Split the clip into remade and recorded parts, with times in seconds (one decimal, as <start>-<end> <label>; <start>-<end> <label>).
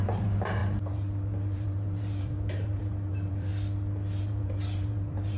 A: 0.0-3.5 remade; 3.5-4.2 recorded; 4.2-5.4 remade